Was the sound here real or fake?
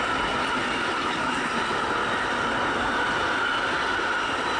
fake